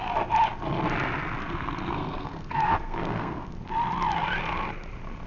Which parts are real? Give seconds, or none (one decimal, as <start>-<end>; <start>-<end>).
0.0-1.4; 3.5-5.3